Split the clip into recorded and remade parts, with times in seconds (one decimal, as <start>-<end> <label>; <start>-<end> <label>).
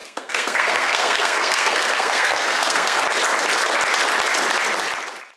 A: 0.0-3.0 remade; 3.0-5.4 recorded